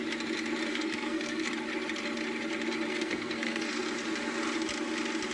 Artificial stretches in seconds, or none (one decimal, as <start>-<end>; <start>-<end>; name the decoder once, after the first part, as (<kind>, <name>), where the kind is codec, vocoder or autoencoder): 0.7-1.5 (codec, SNAC); 2.9-3.9